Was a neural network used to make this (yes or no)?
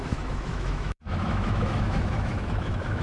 yes